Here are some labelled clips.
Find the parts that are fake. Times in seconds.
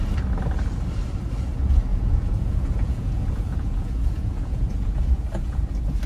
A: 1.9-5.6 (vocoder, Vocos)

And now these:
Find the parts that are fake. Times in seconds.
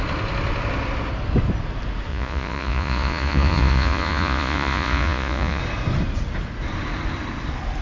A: 2.1-5.6 (vocoder, Vocos)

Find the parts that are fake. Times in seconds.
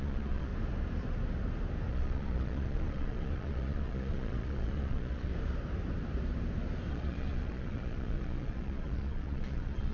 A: 0.0-0.5 (vocoder, Vocos); 1.9-5.3; 6.9-9.9